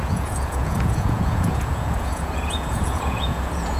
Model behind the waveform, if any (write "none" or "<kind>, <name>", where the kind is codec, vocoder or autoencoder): vocoder, Vocos